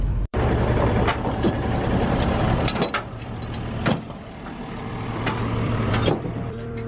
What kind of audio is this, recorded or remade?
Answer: remade